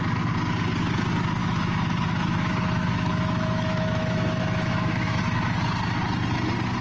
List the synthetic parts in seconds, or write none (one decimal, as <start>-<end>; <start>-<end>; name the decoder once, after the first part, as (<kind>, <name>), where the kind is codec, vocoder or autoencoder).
1.4-5.2 (autoencoder, DAC-VAE)

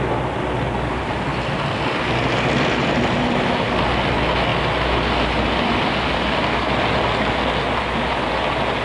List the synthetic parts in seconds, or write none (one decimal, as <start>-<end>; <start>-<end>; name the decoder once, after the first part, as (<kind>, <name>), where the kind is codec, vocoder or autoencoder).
none

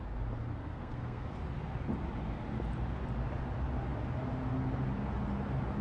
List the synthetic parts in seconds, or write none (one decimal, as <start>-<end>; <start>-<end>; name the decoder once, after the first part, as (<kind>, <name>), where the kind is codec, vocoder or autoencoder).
0.6-1.3 (codec, SNAC)

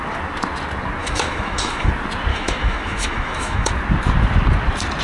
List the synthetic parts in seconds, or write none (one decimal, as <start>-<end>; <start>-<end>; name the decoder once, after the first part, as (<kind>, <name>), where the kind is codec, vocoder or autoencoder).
1.0-1.9 (autoencoder, DAC-VAE); 2.3-3.7

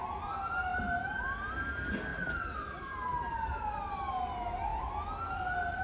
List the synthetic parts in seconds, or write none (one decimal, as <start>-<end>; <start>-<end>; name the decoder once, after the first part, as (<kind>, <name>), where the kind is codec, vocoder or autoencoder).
none

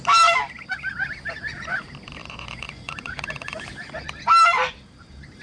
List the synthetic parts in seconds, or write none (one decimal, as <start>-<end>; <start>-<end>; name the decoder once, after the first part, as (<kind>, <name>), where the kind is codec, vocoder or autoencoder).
2.2-3.6 (vocoder, Vocos)

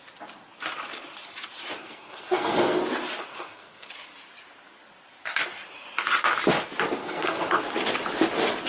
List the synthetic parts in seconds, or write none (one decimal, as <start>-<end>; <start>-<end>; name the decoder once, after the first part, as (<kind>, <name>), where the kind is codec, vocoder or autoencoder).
1.8-2.8 (codec, SNAC); 3.3-3.9; 7.0-7.6